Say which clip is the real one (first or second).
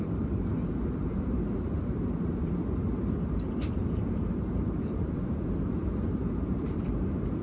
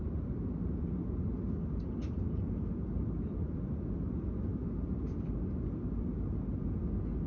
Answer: second